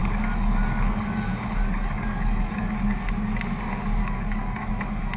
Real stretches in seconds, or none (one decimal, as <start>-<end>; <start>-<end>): 2.8-4.0; 4.7-5.2